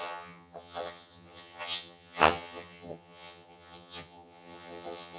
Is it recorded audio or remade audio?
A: remade